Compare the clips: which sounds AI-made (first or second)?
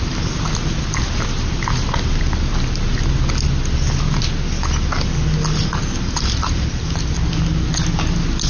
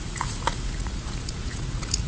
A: second